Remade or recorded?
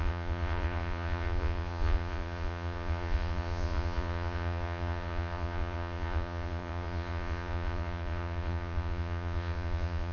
remade